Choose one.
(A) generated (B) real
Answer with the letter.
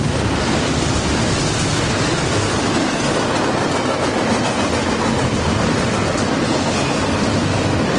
B